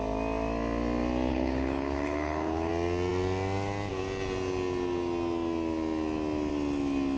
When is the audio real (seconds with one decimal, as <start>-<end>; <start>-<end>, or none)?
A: 0.0-1.3; 2.7-7.2